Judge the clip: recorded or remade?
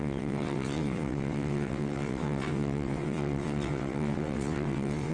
remade